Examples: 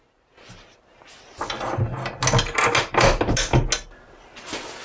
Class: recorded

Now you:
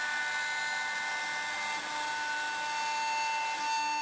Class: recorded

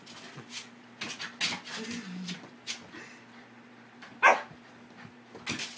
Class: recorded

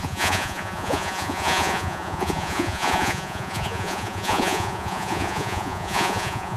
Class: remade